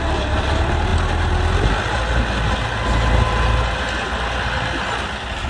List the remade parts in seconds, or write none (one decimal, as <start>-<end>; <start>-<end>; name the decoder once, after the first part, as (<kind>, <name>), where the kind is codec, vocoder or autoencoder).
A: none